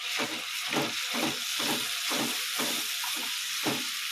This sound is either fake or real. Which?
fake